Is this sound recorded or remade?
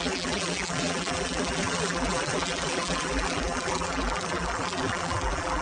remade